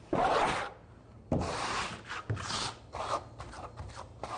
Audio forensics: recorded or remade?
recorded